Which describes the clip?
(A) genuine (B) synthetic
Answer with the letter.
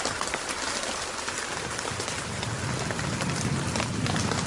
A